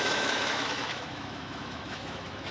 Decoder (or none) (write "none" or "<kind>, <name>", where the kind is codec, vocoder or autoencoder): autoencoder, DAC-VAE